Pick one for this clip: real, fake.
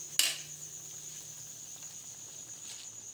real